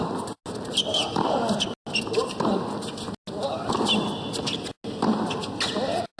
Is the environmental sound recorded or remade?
recorded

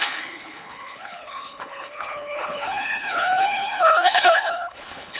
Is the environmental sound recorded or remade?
remade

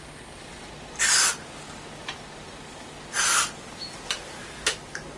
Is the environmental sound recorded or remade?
recorded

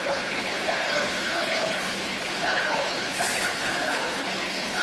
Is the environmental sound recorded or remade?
remade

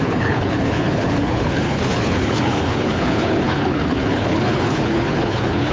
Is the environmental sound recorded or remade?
remade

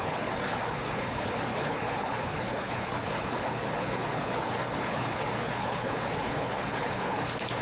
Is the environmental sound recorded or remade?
remade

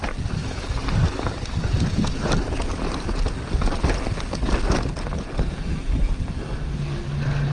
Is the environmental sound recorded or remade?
recorded